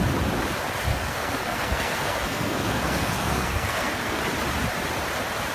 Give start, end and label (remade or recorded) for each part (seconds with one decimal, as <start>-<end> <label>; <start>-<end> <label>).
0.0-0.9 recorded; 0.9-4.2 remade; 4.2-5.5 recorded